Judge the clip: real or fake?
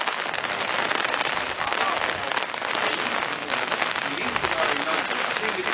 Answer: real